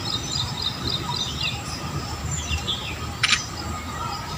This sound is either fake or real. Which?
real